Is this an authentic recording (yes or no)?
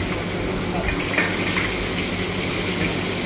yes